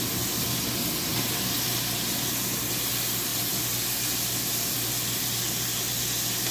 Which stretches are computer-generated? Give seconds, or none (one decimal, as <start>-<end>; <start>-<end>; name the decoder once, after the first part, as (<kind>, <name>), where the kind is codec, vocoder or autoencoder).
1.1-2.7 (vocoder, BigVGAN v2)